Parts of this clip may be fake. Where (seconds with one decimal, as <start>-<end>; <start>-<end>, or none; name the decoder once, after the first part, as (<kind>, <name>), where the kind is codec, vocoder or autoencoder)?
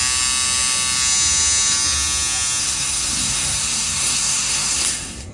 2.6-5.3 (codec, SNAC)